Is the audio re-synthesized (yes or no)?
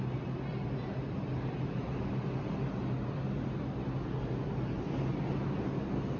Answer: no